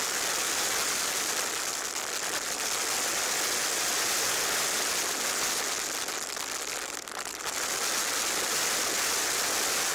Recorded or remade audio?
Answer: recorded